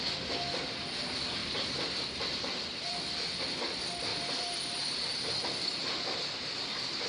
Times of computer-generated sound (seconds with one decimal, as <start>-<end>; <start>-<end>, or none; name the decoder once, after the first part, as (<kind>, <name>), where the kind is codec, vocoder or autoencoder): 1.4-3.4 (vocoder, BigVGAN v2); 4.1-5.3